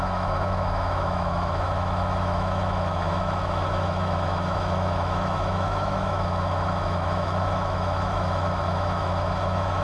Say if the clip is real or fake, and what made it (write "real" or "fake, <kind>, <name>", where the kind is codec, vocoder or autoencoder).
fake, autoencoder, DAC-VAE